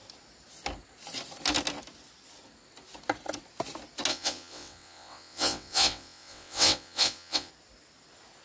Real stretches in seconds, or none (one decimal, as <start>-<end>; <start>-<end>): 0.0-4.1; 7.5-8.4